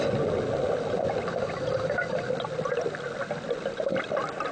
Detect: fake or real real